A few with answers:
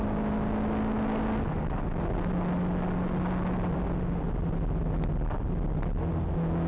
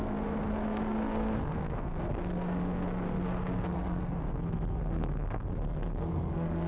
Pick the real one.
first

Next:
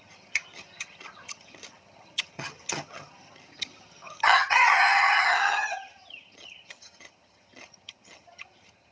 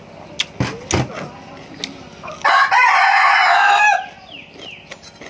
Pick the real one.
second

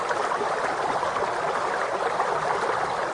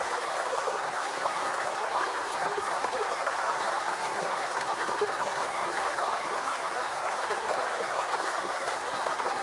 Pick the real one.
first